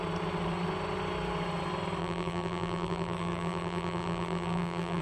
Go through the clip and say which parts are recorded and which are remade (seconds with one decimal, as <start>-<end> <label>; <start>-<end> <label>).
0.0-2.0 recorded; 2.0-5.0 remade